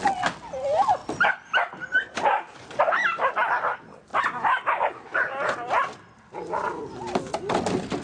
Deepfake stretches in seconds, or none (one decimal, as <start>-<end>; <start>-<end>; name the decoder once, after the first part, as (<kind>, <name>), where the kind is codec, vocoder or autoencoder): none